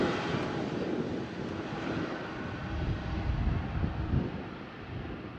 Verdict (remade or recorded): recorded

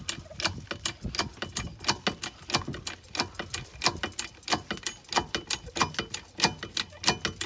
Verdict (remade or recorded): recorded